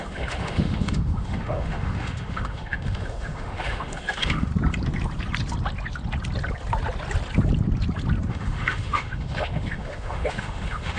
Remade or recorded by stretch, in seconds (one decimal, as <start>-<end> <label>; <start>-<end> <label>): 0.0-4.5 remade; 4.5-8.3 recorded; 8.3-11.0 remade